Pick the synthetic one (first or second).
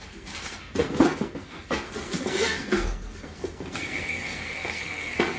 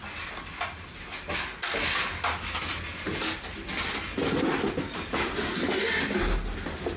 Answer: first